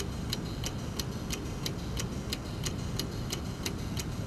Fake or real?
real